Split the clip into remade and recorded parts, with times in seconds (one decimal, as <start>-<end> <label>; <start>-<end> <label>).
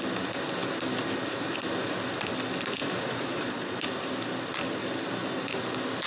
0.0-2.8 recorded; 2.8-3.8 remade; 3.8-6.1 recorded